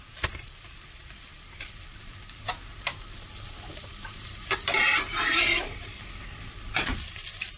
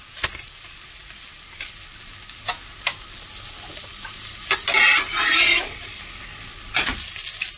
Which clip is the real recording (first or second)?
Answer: second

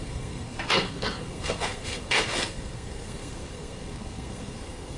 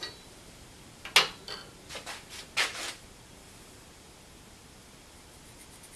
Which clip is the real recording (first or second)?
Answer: second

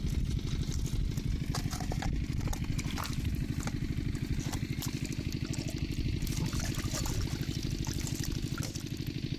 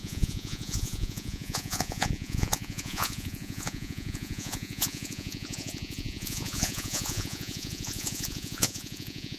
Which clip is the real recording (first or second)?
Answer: first